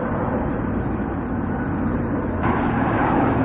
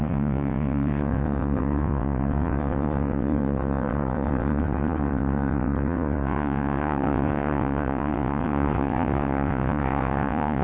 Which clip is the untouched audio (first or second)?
first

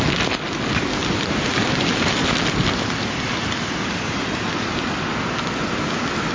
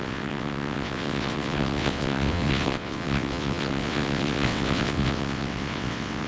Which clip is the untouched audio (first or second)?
first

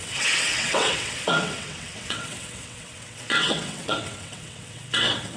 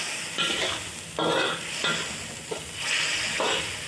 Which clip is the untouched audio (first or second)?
second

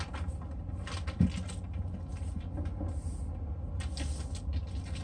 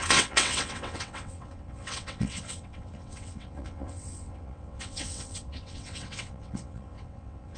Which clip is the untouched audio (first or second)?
first